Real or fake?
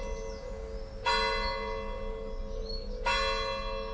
real